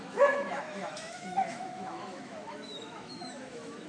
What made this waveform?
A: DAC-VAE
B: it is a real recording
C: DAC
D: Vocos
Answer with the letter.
A